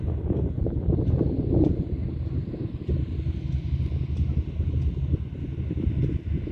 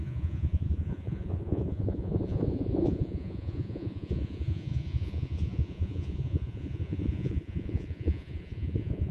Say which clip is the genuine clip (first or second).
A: first